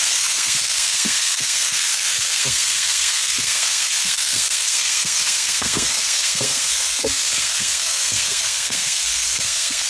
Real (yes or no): no